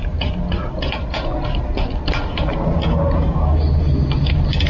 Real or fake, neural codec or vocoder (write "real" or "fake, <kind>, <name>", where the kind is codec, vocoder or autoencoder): real